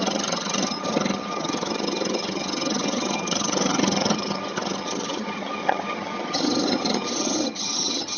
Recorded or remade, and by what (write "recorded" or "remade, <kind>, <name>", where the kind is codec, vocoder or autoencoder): remade, vocoder, HiFi-GAN